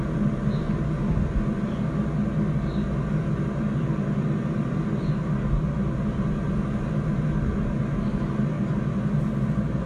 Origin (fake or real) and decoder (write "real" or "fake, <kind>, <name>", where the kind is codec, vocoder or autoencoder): real